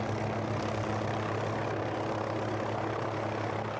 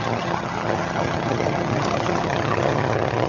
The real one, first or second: first